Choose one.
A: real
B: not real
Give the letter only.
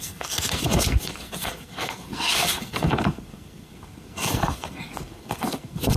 B